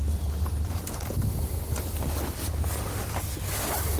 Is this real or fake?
real